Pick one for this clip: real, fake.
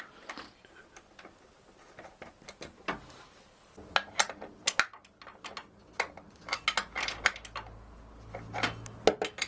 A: real